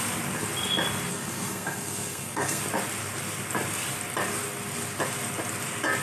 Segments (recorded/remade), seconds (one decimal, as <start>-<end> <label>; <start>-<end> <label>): 0.0-1.1 recorded; 1.1-2.6 remade; 2.6-6.0 recorded